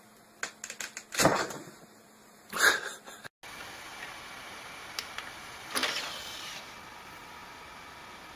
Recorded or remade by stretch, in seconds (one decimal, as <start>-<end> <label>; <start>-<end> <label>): 0.0-1.3 recorded; 1.3-3.0 remade; 3.0-8.4 recorded

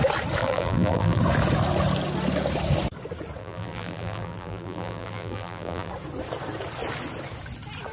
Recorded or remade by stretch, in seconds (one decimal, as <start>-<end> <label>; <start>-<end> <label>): 0.0-0.4 recorded; 0.4-1.2 remade; 1.2-3.4 recorded; 3.4-5.9 remade; 5.9-7.9 recorded

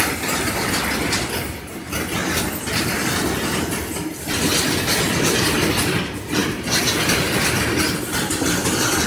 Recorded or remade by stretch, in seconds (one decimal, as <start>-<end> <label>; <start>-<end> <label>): 0.0-6.4 recorded; 6.4-7.0 remade; 7.0-9.1 recorded

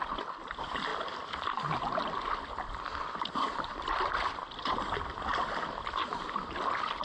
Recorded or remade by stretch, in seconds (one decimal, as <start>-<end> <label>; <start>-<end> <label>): 0.0-0.9 remade; 0.9-3.3 recorded; 3.3-5.3 remade; 5.3-6.1 recorded; 6.1-7.0 remade